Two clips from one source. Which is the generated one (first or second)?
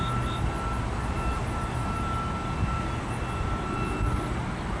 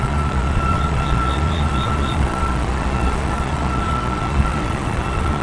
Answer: second